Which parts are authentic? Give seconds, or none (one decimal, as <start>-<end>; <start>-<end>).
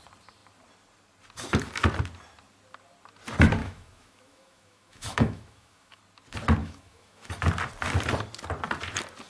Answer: 0.0-3.6; 6.0-6.6; 7.3-9.3